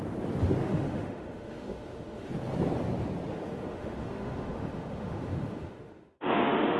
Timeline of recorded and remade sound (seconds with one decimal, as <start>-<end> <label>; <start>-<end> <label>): 0.0-0.6 recorded; 0.6-2.3 remade; 2.3-3.3 recorded; 3.3-6.8 remade